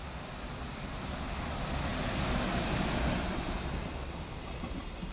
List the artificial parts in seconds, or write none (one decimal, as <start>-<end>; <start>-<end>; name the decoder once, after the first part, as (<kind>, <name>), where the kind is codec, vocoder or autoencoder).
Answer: none